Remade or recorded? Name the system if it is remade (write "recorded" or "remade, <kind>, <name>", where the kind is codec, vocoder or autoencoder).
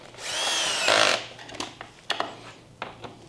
recorded